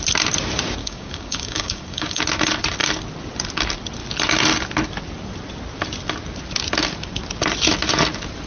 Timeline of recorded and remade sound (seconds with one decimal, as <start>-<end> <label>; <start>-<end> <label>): 0.0-0.8 recorded; 0.8-2.2 remade; 2.2-8.5 recorded